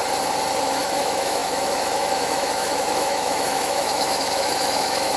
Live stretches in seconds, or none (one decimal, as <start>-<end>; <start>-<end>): 0.0-0.6